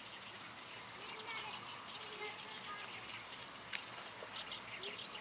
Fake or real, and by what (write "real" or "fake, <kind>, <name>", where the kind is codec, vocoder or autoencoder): real